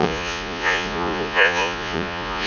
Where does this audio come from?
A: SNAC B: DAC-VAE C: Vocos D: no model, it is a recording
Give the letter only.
C